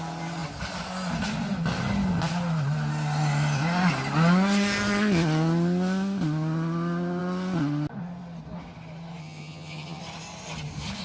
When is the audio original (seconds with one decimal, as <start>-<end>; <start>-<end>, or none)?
0.0-9.2; 10.0-11.0